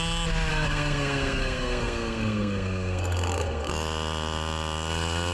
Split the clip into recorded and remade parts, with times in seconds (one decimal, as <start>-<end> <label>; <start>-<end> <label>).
0.0-0.5 recorded; 0.5-3.7 remade; 3.7-5.3 recorded